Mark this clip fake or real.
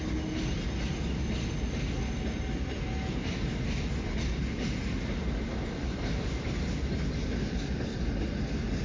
real